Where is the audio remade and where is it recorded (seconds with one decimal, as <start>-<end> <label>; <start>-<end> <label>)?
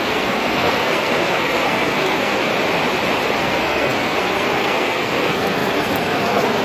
0.0-2.5 remade; 2.5-3.4 recorded; 3.4-6.6 remade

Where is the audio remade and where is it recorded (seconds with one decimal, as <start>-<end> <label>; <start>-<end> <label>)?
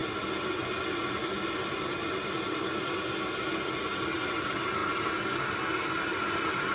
0.0-6.7 recorded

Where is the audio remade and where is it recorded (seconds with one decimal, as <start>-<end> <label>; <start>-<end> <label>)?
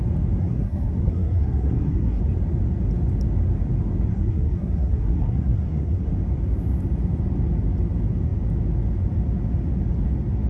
0.0-0.4 recorded; 0.4-2.2 remade; 2.2-4.1 recorded; 4.1-6.1 remade; 6.1-10.5 recorded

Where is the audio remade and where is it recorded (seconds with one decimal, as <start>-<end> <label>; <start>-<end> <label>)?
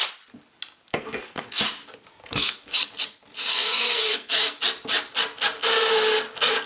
0.0-0.9 recorded; 0.9-1.6 remade; 1.6-2.2 recorded; 2.2-2.8 remade; 2.8-3.5 recorded; 3.5-4.6 remade; 4.6-6.7 recorded